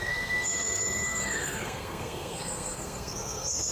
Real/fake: fake